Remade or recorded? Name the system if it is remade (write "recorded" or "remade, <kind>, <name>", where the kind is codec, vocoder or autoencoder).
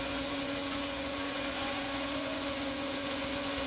remade, vocoder, Vocos